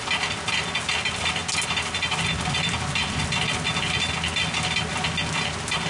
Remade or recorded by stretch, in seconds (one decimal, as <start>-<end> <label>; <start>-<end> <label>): 0.0-5.9 recorded